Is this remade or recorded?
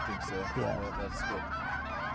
recorded